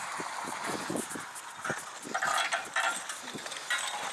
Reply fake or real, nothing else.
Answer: real